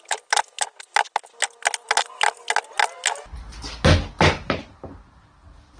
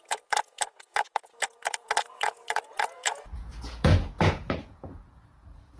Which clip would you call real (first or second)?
first